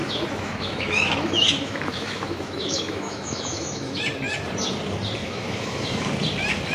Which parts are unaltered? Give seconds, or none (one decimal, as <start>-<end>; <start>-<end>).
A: 4.0-5.2; 6.1-6.7